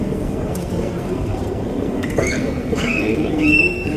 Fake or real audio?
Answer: fake